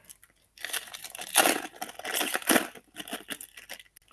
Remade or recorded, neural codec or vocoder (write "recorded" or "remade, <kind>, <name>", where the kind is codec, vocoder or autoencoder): recorded